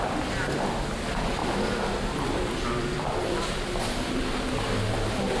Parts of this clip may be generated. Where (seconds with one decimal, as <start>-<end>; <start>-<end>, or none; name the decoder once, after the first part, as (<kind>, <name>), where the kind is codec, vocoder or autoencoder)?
1.4-4.4 (vocoder, BigVGAN v2)